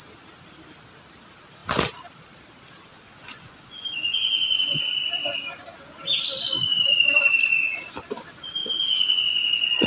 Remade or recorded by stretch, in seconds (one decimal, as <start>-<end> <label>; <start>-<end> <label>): 0.0-2.9 recorded; 2.9-4.8 remade; 4.8-8.6 recorded; 8.6-9.9 remade